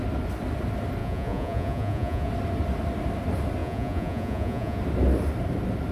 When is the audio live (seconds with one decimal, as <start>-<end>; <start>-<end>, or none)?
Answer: 0.0-1.0; 2.3-3.6; 4.8-5.9